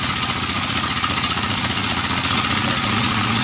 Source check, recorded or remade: remade